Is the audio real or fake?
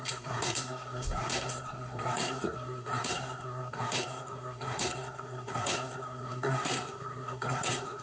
fake